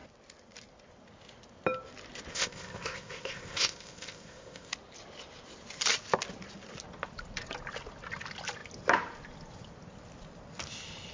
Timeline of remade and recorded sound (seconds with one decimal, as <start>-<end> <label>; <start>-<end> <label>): 0.0-2.3 recorded; 2.3-4.7 remade; 4.7-11.1 recorded